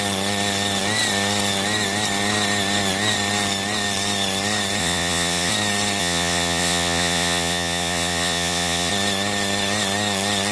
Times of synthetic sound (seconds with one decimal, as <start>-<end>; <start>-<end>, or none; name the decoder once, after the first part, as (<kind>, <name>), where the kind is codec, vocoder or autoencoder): 4.8-5.5 (vocoder, Vocos); 6.0-8.9